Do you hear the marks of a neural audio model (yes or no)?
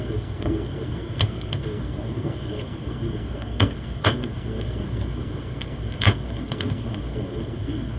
yes